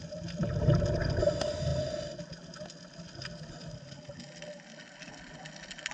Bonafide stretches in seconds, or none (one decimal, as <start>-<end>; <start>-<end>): 0.0-5.9